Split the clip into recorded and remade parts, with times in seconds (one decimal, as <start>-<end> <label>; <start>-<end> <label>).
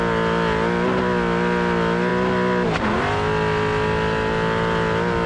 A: 0.0-5.3 recorded